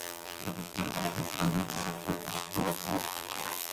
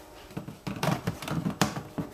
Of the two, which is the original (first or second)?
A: second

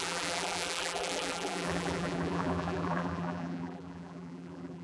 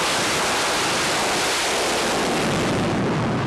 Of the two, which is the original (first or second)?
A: second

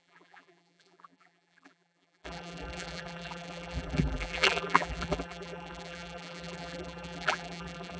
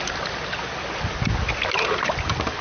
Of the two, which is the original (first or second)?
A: second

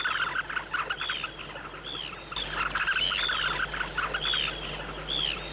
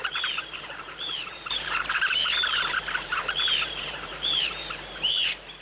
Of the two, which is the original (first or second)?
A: first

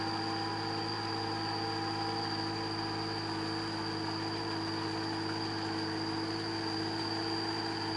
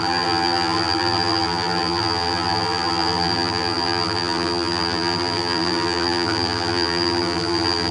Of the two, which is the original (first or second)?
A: first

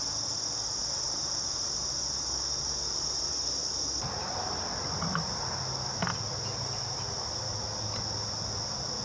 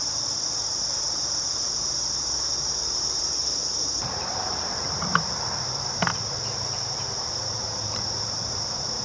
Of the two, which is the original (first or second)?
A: first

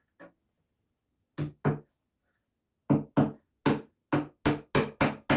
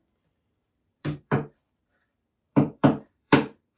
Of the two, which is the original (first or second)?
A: first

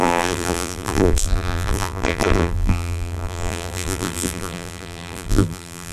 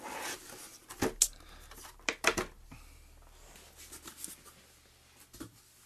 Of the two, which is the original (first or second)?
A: second